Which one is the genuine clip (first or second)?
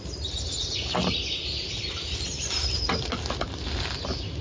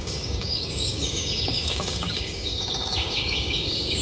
first